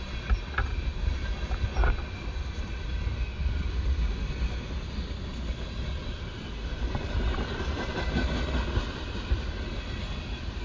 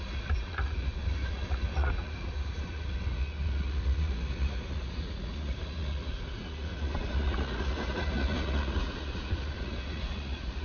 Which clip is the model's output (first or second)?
second